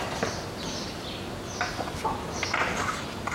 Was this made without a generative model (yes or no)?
yes